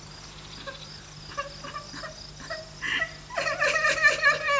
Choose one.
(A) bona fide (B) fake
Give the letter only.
A